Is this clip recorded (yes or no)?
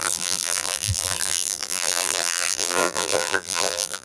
no